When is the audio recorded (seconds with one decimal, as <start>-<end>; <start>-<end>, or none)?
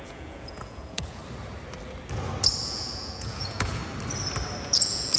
1.2-2.6; 3.8-4.6